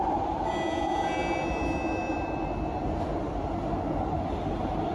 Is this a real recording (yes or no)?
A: yes